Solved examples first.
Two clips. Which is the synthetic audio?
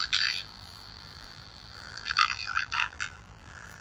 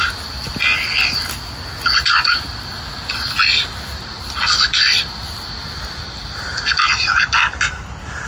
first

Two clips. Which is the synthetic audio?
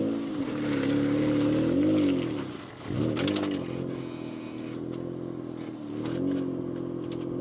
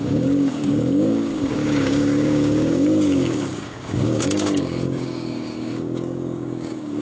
second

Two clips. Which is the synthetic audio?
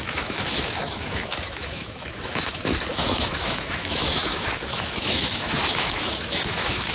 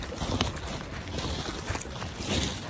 first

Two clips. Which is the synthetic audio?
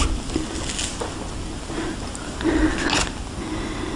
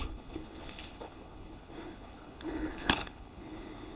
second